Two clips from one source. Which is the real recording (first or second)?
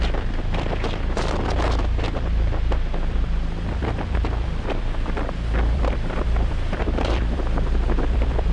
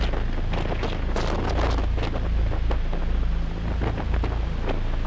second